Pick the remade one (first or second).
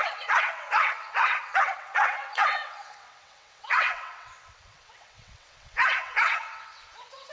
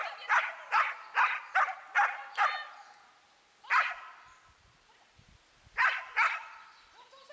first